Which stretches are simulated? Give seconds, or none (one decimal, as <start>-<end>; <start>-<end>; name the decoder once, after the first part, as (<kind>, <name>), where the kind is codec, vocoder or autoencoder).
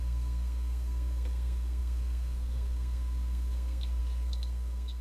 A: 0.0-5.0 (codec, SNAC)